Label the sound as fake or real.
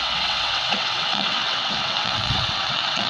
fake